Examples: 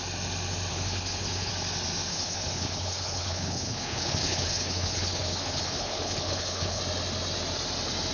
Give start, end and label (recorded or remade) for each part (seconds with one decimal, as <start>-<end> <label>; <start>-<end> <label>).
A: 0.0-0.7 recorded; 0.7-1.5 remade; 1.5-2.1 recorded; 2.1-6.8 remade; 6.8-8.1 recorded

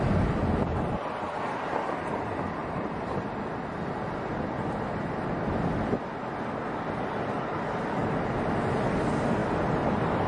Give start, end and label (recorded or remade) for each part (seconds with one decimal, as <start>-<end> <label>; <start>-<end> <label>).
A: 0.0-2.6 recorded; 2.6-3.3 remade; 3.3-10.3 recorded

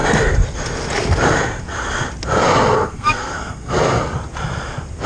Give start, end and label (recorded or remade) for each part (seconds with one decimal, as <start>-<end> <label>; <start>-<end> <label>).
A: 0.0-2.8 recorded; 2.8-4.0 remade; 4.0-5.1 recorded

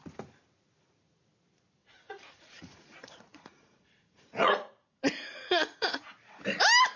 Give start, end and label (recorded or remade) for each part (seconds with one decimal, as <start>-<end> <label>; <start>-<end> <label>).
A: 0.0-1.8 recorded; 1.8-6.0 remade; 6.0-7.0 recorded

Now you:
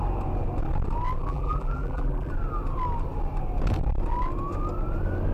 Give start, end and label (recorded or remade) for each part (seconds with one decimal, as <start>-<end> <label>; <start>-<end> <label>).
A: 0.0-1.2 recorded; 1.2-2.3 remade; 2.3-5.3 recorded